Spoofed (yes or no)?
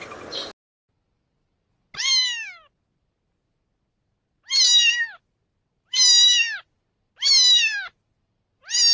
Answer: no